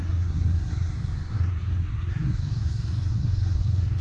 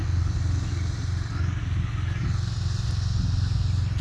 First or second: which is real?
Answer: second